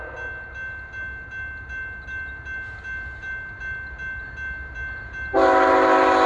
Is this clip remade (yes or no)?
no